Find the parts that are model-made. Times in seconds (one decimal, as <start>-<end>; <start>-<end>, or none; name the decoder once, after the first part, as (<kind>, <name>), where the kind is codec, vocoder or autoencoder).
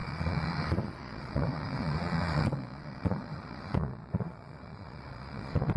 0.0-5.8 (vocoder, Vocos)